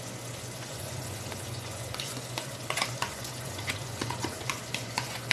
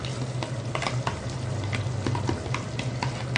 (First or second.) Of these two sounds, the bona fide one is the second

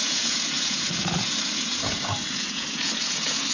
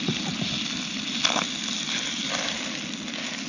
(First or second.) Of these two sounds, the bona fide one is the second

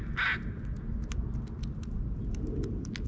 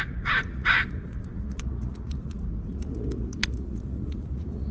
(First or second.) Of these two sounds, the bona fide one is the first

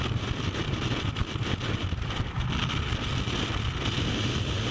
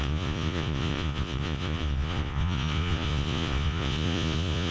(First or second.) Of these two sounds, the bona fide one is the first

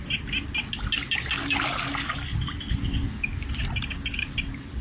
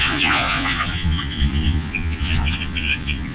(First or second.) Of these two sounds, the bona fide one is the first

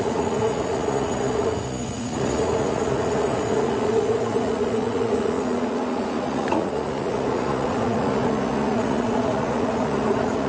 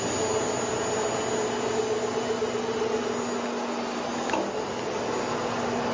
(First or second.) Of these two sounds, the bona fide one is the second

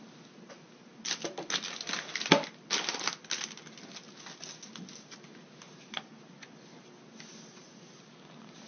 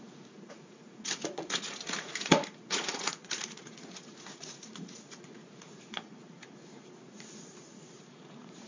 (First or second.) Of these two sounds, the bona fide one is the first